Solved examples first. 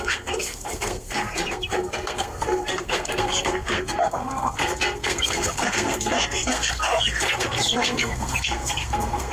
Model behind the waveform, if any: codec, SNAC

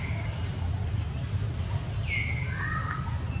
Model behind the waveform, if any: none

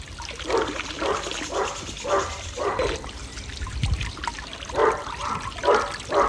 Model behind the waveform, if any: none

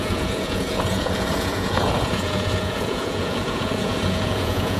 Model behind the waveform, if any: vocoder, Vocos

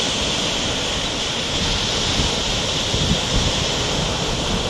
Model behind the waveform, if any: none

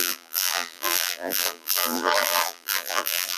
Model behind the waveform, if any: vocoder, BigVGAN v2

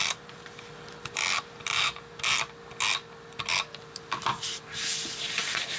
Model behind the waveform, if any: none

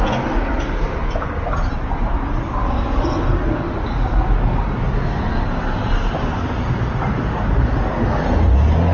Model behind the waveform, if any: none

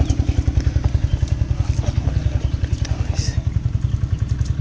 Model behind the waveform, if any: none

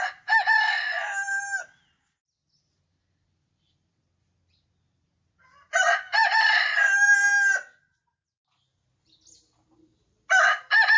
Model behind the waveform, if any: none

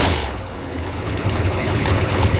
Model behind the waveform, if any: codec, HILCodec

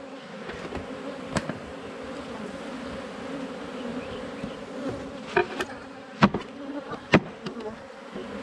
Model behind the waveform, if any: none